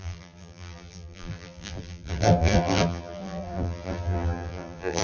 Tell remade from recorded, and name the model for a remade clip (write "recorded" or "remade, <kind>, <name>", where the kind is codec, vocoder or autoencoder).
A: remade, vocoder, BigVGAN v2